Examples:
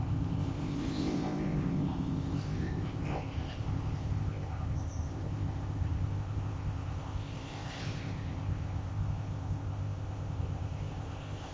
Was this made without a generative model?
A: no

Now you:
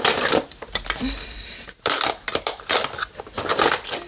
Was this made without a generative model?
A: yes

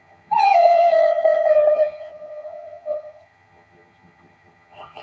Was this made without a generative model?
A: no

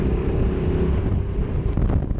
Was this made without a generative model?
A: yes